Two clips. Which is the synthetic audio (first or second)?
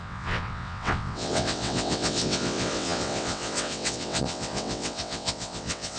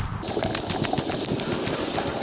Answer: first